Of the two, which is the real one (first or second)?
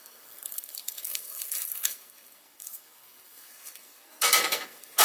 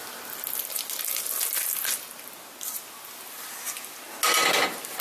second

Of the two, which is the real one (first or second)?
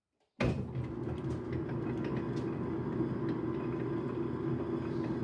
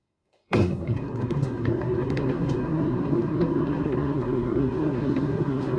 first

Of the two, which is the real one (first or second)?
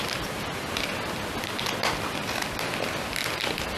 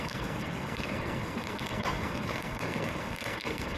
first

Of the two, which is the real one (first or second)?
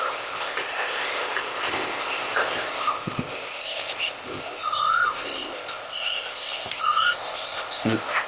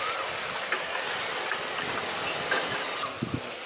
second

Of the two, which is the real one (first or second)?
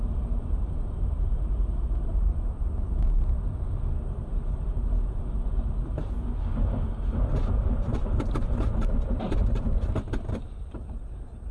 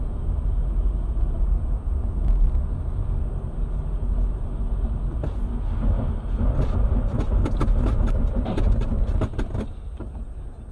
second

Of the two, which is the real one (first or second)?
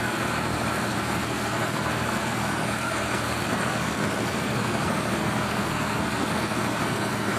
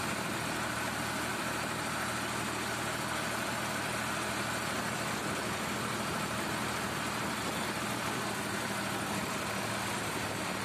second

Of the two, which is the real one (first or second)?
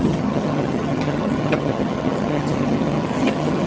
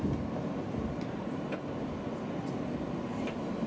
second